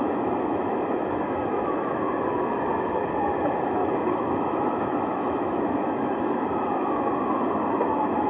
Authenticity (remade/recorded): remade